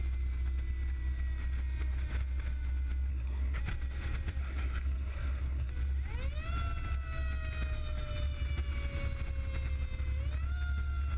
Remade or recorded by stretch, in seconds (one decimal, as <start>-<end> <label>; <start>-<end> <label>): 0.0-3.1 recorded; 3.1-3.6 remade; 3.6-4.4 recorded; 4.4-5.7 remade; 5.7-11.2 recorded